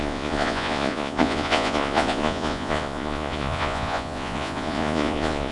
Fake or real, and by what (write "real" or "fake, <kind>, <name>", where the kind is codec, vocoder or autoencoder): fake, vocoder, Vocos